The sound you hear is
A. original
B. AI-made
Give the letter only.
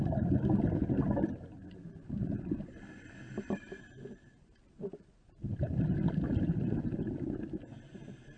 A